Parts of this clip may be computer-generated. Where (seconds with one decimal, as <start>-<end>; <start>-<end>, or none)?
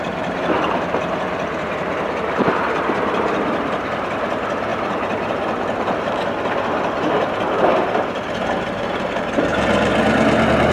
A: 0.0-9.9